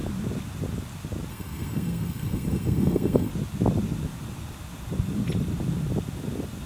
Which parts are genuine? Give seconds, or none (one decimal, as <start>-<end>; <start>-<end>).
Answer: 0.0-1.3; 3.3-6.7